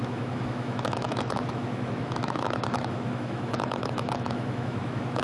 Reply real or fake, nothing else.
fake